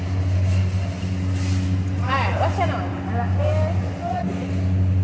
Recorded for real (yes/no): yes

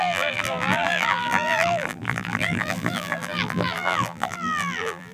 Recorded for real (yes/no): no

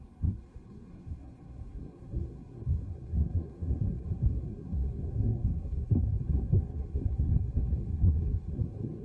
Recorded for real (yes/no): no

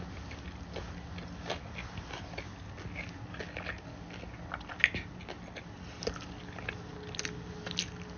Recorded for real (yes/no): yes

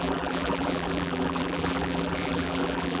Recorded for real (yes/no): no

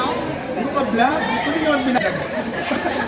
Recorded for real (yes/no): no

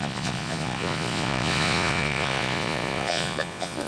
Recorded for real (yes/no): no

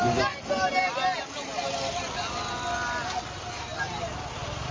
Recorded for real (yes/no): yes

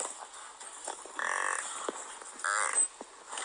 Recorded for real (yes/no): yes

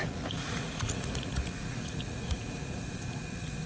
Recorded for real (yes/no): no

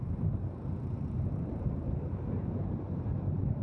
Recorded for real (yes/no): no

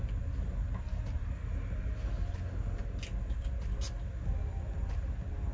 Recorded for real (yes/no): yes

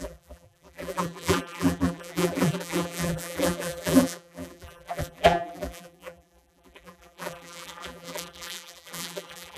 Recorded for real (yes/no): no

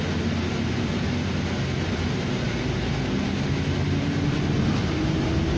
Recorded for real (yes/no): yes